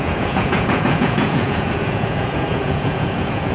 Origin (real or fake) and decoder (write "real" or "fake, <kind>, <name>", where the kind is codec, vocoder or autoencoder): fake, vocoder, Vocos